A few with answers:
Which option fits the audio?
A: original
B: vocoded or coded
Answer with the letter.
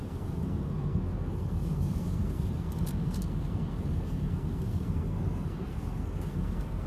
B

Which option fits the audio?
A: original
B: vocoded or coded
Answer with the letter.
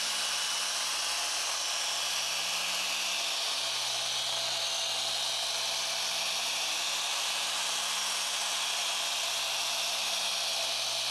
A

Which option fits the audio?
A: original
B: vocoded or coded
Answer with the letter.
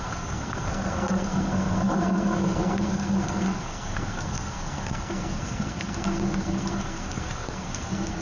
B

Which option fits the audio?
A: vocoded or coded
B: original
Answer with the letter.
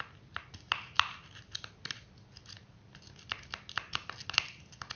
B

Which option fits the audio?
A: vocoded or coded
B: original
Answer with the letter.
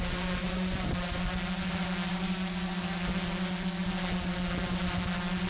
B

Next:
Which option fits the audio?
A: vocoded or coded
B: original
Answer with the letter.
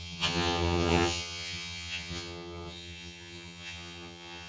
A